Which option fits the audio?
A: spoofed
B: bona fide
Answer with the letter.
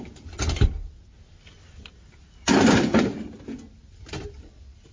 B